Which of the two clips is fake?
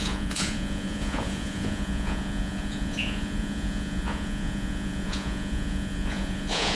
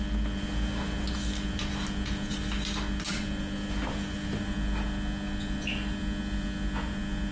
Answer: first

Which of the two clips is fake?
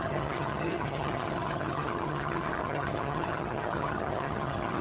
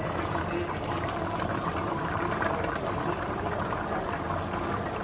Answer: first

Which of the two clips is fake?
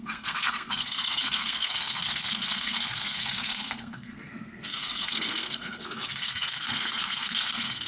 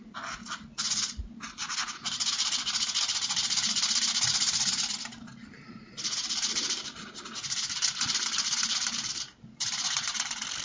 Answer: first